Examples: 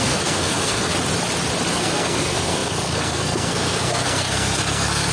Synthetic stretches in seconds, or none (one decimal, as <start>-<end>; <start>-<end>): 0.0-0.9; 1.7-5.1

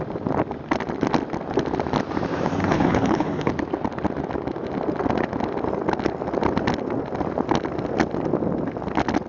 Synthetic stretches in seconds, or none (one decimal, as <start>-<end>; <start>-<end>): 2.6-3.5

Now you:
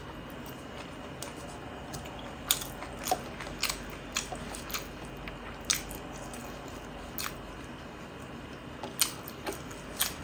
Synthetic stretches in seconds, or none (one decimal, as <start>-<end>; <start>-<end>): none